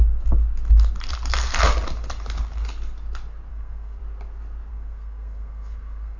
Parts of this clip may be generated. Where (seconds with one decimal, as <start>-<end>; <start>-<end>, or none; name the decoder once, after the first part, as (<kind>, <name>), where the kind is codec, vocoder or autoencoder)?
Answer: 3.5-4.0 (codec, SNAC); 4.7-6.2